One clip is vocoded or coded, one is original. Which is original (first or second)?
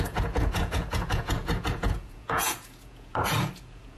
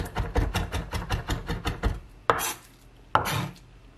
second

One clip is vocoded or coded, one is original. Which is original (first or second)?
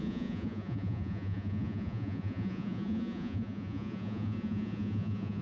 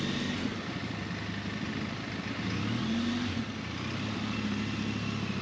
second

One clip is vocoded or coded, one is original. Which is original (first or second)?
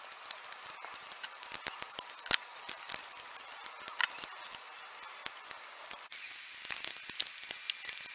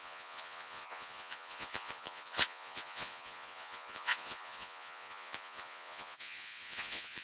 first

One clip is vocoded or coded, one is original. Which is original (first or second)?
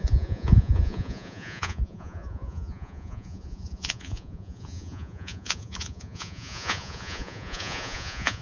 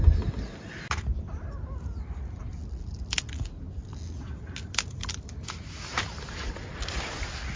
second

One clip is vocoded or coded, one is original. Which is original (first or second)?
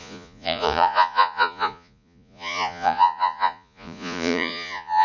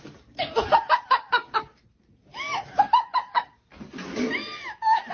second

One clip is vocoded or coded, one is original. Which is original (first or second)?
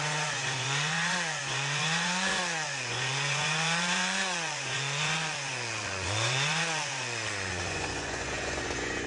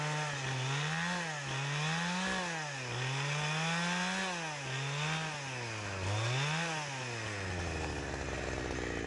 second